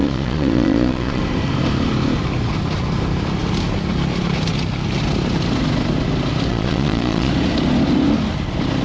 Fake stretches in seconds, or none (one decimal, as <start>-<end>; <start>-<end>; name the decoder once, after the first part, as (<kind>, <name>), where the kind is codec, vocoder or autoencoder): 0.0-1.2 (vocoder, Vocos); 6.5-7.3